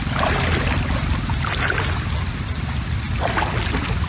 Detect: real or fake real